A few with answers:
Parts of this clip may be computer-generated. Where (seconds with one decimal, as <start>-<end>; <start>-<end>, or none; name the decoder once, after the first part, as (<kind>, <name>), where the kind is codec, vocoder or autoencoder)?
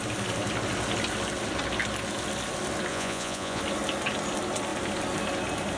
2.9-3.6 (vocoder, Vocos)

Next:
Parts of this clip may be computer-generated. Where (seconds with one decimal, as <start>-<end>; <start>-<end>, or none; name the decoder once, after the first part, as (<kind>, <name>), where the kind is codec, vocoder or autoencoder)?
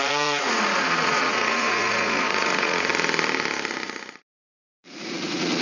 0.0-2.9 (vocoder, Vocos); 4.2-5.6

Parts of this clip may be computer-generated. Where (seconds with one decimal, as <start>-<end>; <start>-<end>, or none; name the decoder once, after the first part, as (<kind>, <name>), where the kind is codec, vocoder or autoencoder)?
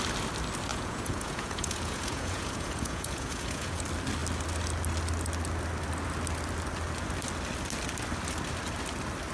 0.7-3.8 (vocoder, Vocos)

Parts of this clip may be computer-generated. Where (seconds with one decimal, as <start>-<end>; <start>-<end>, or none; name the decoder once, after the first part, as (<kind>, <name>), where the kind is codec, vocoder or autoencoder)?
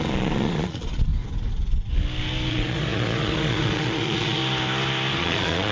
0.0-1.1 (vocoder, Vocos); 2.5-4.4; 5.2-5.7